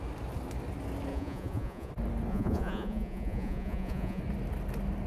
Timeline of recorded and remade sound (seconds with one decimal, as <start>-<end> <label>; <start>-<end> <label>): 0.0-1.1 recorded; 1.1-1.9 remade; 1.9-2.3 recorded; 2.3-4.2 remade; 4.2-5.1 recorded

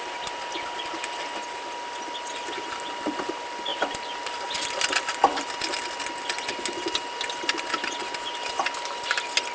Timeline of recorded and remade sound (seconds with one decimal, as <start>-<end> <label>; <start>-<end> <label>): 0.0-9.5 recorded

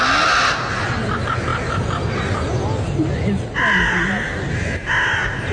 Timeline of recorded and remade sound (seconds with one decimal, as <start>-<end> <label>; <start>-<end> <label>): 0.0-5.5 recorded

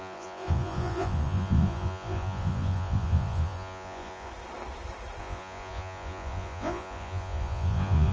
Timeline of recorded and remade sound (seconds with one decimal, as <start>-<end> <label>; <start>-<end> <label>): 0.0-4.3 remade; 4.3-5.2 recorded; 5.2-8.1 remade